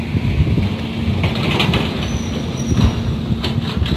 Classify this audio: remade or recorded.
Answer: recorded